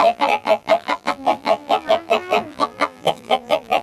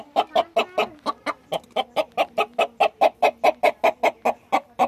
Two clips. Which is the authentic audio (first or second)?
second